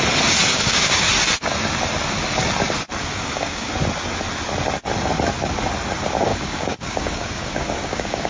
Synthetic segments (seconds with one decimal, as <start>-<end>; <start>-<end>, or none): 0.5-1.1; 3.0-3.7; 6.3-8.3